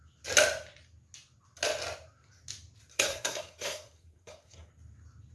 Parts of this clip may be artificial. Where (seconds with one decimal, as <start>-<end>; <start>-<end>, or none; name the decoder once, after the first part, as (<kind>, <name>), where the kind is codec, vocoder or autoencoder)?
2.9-4.7 (codec, SNAC)